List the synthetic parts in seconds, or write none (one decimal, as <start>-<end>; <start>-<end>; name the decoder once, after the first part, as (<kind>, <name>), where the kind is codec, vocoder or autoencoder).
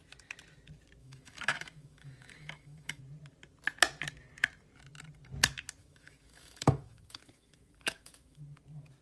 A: 1.0-3.0 (autoencoder, DAC-VAE); 5.8-8.4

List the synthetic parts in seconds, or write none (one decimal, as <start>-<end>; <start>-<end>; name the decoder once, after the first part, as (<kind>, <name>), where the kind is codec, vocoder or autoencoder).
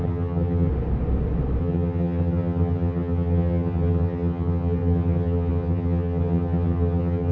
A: 0.0-0.7 (vocoder, HiFi-GAN); 1.6-7.3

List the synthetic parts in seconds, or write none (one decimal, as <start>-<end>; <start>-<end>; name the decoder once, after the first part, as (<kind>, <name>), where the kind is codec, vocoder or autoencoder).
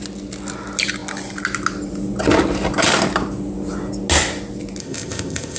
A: 4.8-5.6 (codec, ZipCodec)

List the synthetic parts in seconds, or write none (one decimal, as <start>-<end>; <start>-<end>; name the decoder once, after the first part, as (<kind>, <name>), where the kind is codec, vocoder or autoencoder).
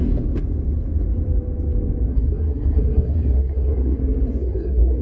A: 2.1-4.0 (codec, SNAC); 4.4-5.0